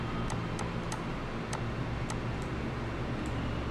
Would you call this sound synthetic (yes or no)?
no